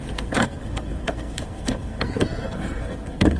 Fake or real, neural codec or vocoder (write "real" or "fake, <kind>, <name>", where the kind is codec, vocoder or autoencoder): fake, codec, SNAC